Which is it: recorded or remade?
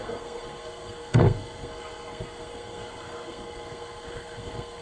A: remade